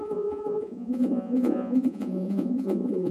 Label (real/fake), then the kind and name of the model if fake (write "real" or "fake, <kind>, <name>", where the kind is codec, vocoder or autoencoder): fake, vocoder, Vocos